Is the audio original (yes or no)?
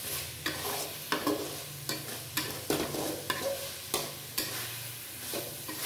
yes